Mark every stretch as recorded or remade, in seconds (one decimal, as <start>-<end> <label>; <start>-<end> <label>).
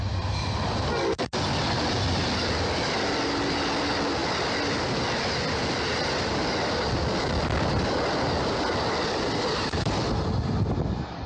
0.0-11.3 recorded